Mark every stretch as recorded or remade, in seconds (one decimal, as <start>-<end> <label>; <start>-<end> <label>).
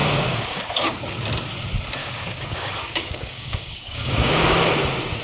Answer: 0.0-1.0 remade; 1.0-2.0 recorded; 2.0-4.7 remade; 4.7-5.2 recorded